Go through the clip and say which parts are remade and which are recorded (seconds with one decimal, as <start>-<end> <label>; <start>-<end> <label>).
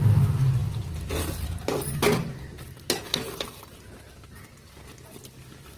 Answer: 0.0-5.8 recorded